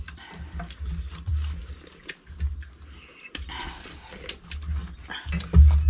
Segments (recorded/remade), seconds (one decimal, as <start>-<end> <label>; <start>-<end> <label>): 0.0-5.9 recorded